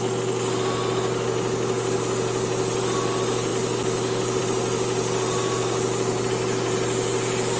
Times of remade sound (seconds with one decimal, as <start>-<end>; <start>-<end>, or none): none